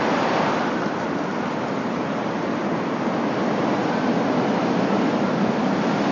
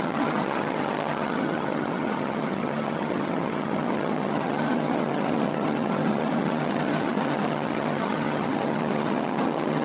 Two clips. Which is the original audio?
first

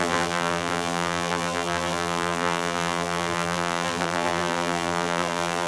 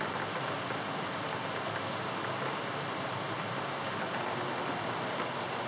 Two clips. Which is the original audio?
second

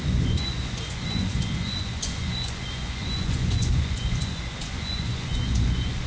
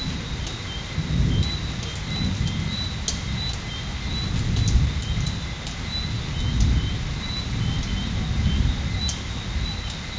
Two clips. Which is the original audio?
second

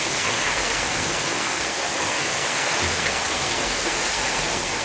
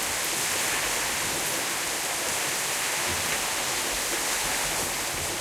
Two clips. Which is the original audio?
second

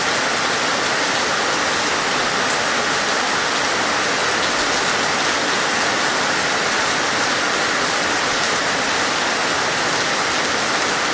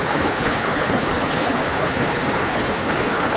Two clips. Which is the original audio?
first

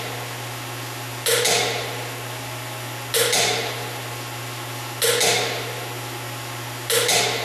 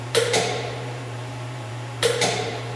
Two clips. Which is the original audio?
first